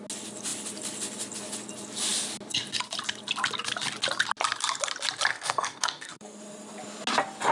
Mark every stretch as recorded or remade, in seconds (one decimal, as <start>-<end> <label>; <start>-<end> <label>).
0.0-5.3 recorded; 5.3-6.4 remade; 6.4-7.5 recorded